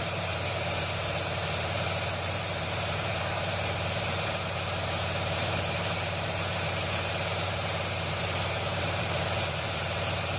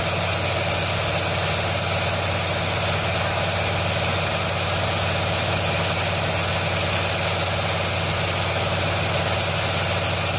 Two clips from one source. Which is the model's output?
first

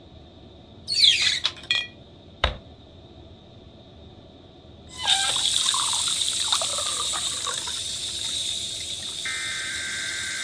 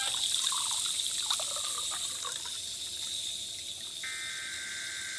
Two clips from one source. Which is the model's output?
first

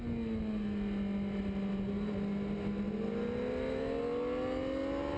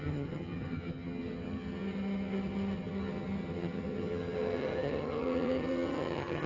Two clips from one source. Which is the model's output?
second